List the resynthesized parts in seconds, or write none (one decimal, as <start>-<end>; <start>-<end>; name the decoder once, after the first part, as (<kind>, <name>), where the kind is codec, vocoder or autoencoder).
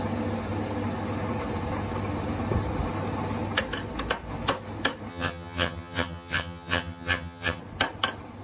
5.1-7.6 (vocoder, HiFi-GAN)